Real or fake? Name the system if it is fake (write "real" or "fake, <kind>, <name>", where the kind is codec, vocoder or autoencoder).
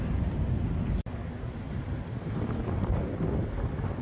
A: real